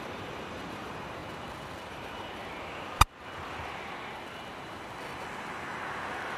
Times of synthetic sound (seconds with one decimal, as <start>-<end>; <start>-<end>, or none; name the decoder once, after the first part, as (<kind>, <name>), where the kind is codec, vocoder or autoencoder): 0.0-1.2 (vocoder, BigVGAN v2); 1.9-2.4